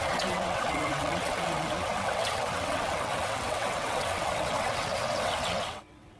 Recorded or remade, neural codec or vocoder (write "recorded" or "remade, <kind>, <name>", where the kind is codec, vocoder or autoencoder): remade, vocoder, WaveNeXt